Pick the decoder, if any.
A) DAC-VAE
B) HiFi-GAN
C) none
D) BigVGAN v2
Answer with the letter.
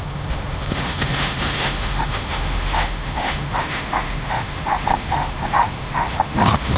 A